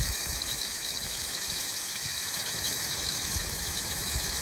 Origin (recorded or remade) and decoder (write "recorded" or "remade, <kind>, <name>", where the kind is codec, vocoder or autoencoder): remade, autoencoder, DAC-VAE